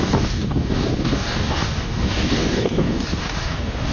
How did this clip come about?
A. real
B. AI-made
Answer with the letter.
B